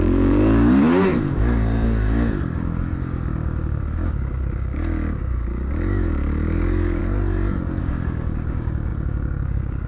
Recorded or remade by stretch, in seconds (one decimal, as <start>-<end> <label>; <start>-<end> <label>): 0.0-7.0 remade; 7.0-7.8 recorded; 7.8-9.9 remade